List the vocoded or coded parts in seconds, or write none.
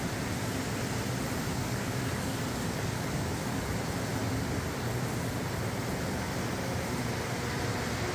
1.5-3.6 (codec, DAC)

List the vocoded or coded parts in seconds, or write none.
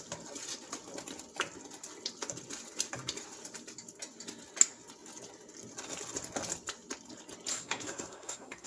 7.5-8.7 (codec, SNAC)